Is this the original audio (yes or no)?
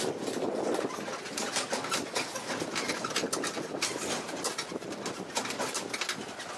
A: yes